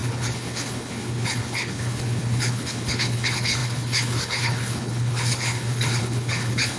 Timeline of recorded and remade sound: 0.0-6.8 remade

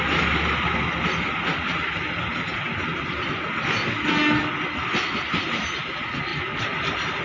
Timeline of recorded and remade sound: 0.0-7.2 recorded

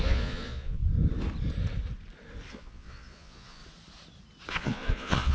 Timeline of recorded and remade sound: 0.0-0.8 remade; 0.8-2.5 recorded; 2.5-3.6 remade; 3.6-4.5 recorded; 4.5-5.3 remade

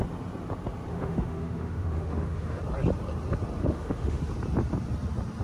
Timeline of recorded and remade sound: 0.0-0.9 recorded; 0.9-2.6 remade; 2.6-3.6 recorded; 3.6-4.2 remade; 4.2-5.4 recorded

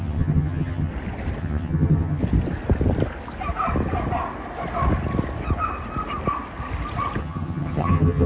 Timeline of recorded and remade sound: 0.0-0.9 remade; 0.9-1.4 recorded; 1.4-2.2 remade; 2.2-7.2 recorded; 7.2-8.3 remade

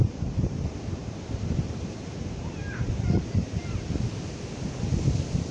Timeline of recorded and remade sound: 0.0-1.0 recorded; 1.0-2.9 remade; 2.9-5.5 recorded

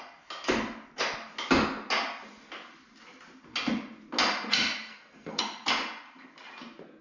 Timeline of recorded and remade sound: 0.0-4.9 recorded; 4.9-5.4 remade; 5.4-7.0 recorded

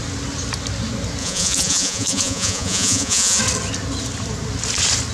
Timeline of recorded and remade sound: 0.0-1.2 recorded; 1.2-3.4 remade; 3.4-5.1 recorded